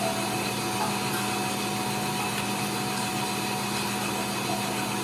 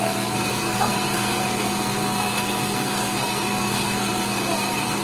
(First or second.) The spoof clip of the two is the second